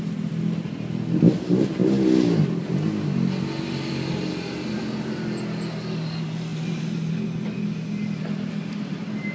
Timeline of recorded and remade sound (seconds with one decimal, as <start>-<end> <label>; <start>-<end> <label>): 0.0-9.3 recorded